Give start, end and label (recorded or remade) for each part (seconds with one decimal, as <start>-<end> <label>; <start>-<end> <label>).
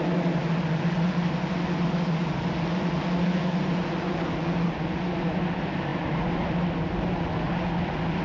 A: 0.0-8.2 recorded